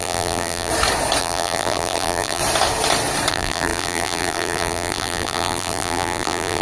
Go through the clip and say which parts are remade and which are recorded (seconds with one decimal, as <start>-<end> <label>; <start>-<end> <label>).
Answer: 0.0-0.7 remade; 0.7-1.2 recorded; 1.2-2.4 remade; 2.4-3.3 recorded; 3.3-6.6 remade